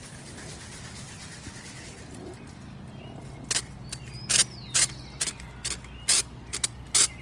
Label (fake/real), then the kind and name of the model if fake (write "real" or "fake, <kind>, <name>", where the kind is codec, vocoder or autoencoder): real